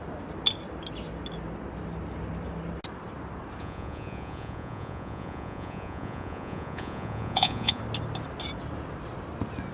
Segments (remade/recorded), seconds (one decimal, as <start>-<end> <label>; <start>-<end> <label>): 0.0-3.6 recorded; 3.6-7.8 remade; 7.8-9.7 recorded